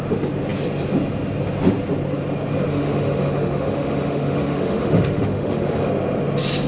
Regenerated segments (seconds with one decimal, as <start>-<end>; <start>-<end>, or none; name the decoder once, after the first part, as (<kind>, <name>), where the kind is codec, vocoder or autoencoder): 2.7-5.9 (autoencoder, DAC-VAE)